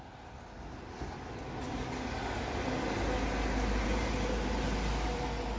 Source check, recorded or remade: recorded